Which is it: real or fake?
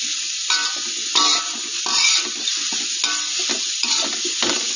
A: real